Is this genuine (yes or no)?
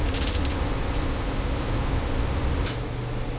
yes